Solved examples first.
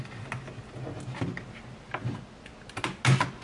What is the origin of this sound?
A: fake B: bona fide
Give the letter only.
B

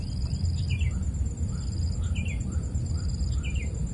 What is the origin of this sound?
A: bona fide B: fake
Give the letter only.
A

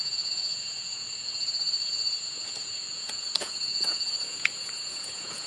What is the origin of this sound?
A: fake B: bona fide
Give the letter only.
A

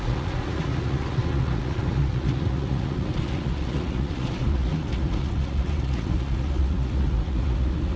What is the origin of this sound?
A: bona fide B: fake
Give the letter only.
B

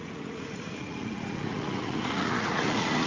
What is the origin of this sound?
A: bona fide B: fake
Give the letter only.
B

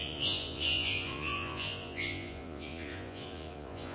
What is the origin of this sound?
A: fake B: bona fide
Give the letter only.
A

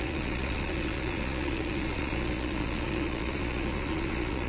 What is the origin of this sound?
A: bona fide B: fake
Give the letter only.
B